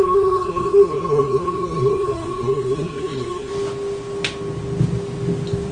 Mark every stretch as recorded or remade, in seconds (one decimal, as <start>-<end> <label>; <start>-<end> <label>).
0.0-3.5 remade; 3.5-5.7 recorded